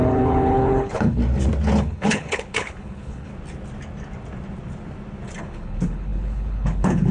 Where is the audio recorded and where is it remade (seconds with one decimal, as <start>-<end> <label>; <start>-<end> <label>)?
0.0-1.2 remade; 1.2-1.8 recorded; 1.8-3.3 remade; 3.3-5.4 recorded; 5.4-7.1 remade